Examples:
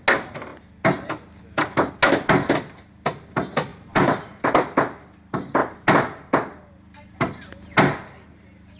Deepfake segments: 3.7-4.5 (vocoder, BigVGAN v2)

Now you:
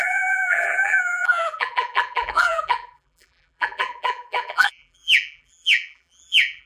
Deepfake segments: 0.0-6.7 (vocoder, BigVGAN v2)

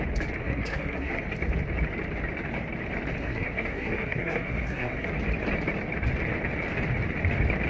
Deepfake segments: 0.4-1.2 (codec, SNAC); 3.2-5.1

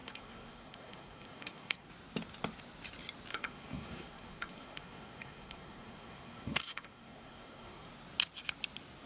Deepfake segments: 0.0-1.9 (codec, SNAC); 3.3-7.9

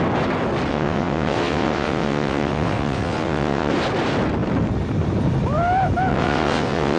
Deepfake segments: 0.7-3.7 (vocoder, WaveNeXt); 6.1-7.0